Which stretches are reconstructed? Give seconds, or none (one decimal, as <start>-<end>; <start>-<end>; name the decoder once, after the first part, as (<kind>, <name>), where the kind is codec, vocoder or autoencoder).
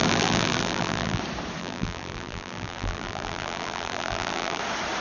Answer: 0.0-1.2 (vocoder, BigVGAN v2); 1.6-4.6